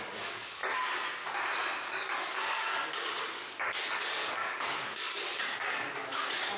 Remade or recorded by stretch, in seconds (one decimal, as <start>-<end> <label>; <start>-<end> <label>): 0.0-0.6 remade; 0.6-1.9 recorded; 1.9-6.6 remade